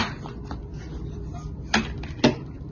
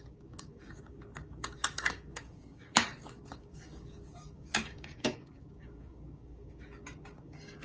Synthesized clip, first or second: second